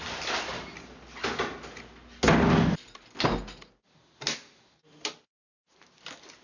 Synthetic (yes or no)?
no